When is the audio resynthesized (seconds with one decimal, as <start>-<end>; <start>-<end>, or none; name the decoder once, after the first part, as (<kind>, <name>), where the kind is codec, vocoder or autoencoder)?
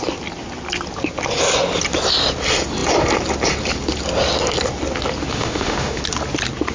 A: 5.3-6.0 (autoencoder, DAC-VAE)